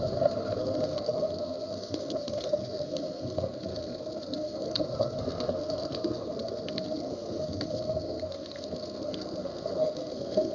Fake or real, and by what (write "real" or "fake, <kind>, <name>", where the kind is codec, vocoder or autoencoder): fake, codec, SNAC